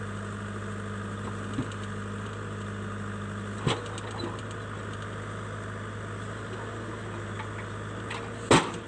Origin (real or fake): real